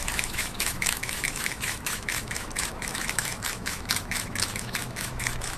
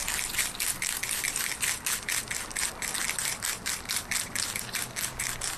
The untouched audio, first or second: second